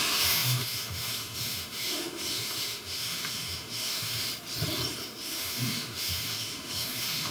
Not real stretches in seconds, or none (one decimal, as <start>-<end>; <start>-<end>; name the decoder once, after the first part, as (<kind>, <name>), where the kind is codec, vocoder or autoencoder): 0.0-4.3 (autoencoder, DAC-VAE); 5.2-7.3